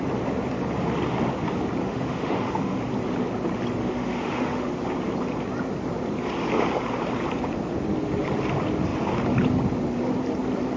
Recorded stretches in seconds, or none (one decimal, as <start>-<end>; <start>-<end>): 0.0-1.8; 2.8-3.8; 4.7-10.8